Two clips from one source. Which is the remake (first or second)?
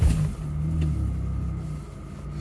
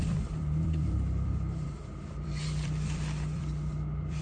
second